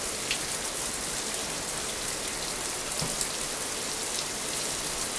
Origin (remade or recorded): recorded